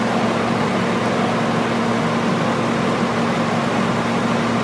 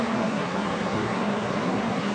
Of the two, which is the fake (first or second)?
second